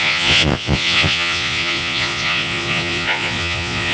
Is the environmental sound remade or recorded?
remade